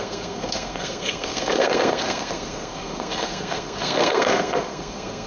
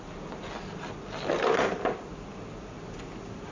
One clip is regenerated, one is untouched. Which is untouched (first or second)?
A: second